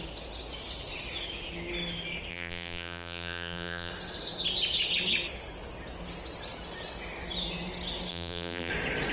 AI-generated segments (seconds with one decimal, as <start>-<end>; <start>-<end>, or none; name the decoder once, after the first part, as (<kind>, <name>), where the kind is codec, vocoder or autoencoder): 2.3-3.9 (vocoder, BigVGAN v2); 8.1-8.7